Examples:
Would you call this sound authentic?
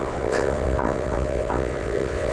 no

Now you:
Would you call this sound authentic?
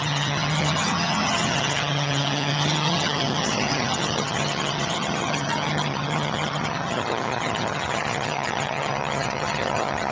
no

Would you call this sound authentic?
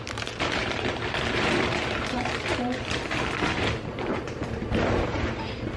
no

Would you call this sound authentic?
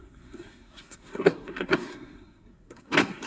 no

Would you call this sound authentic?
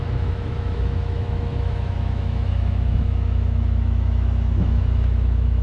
no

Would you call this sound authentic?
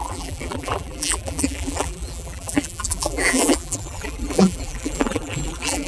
no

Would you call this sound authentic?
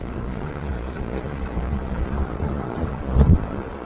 no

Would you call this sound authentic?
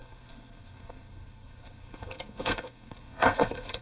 no